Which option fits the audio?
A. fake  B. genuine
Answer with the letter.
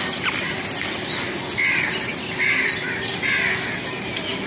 B